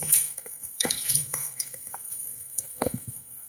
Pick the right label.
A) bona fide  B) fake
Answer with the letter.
B